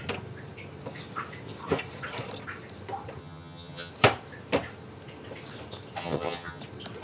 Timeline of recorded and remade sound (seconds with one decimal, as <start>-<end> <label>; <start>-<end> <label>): 0.0-3.2 recorded; 3.2-3.9 remade; 3.9-6.0 recorded; 6.0-6.6 remade; 6.6-7.0 recorded